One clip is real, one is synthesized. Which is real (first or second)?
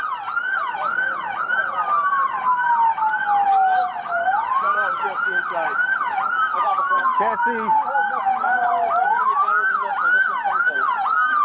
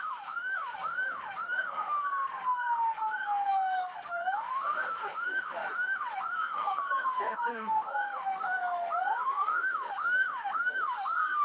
first